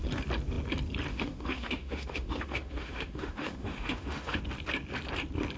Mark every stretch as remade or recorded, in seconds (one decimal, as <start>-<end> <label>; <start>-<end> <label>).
0.0-1.1 recorded; 1.1-4.4 remade; 4.4-5.6 recorded